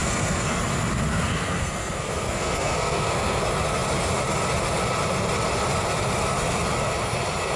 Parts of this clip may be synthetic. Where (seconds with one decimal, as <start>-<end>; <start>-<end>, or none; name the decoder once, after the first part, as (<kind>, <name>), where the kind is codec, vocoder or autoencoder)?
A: 0.0-0.6 (codec, SNAC); 1.1-3.4